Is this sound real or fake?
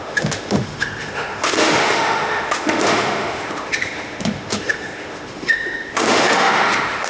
fake